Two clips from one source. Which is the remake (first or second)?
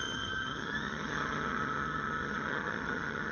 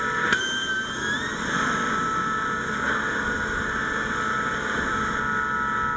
first